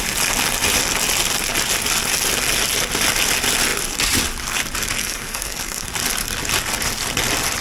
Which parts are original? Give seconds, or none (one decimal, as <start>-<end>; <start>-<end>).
0.0-5.0; 5.9-7.6